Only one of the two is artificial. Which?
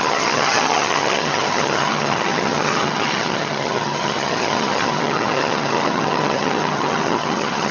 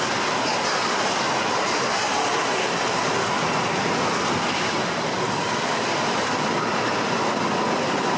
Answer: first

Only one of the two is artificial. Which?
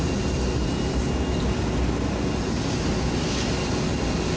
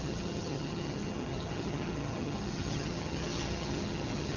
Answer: second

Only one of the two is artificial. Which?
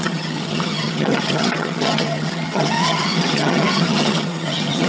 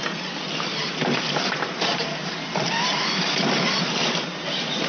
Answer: first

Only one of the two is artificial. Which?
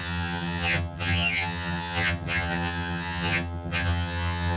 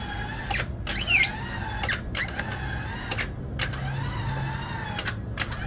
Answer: first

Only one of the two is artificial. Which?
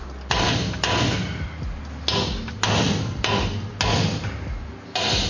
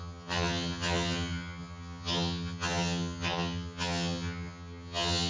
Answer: second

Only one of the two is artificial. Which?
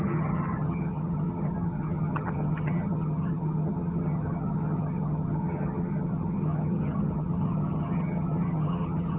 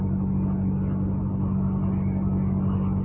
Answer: first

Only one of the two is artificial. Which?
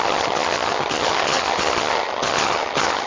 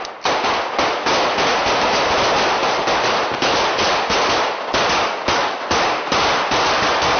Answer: first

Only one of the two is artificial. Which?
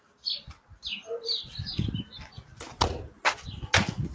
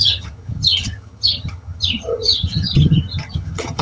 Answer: second